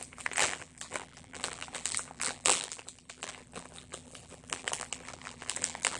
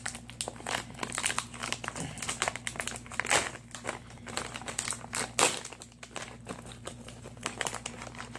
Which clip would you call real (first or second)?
second